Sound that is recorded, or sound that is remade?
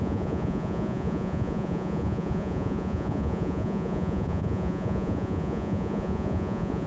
remade